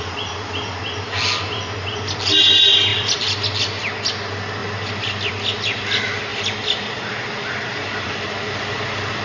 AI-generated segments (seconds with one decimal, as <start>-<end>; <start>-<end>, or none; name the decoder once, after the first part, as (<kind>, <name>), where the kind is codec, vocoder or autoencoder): 6.3-8.1 (vocoder, BigVGAN v2)